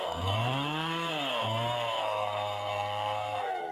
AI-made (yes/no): yes